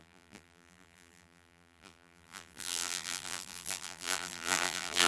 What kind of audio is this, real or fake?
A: fake